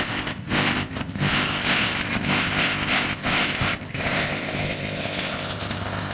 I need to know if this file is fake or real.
fake